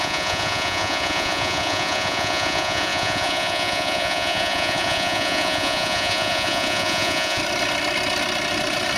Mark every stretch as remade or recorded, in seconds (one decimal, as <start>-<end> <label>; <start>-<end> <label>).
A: 0.0-7.4 remade; 7.4-9.0 recorded